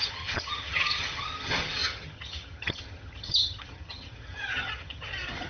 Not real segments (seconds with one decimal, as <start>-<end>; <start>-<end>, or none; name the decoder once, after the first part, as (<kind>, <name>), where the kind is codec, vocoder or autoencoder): 0.0-5.5 (vocoder, HiFi-GAN)